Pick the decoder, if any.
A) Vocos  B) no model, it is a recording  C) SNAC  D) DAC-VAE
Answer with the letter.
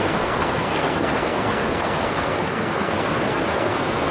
C